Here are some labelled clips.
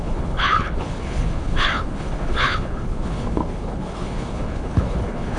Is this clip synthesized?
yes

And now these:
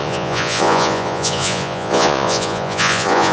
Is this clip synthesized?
yes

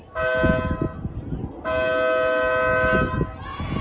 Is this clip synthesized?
no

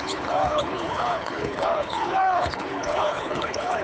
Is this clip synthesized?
yes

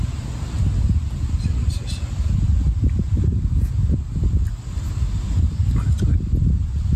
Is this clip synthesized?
no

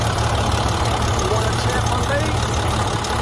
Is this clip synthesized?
no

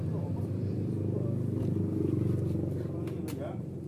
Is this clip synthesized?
no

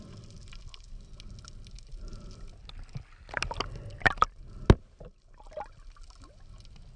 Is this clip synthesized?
no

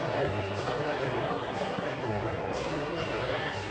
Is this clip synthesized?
yes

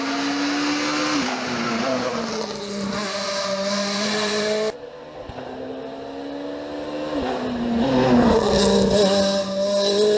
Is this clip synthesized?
no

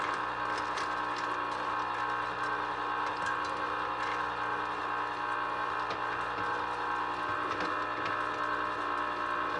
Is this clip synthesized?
no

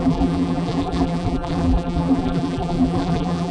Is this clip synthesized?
yes